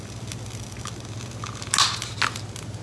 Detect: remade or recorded recorded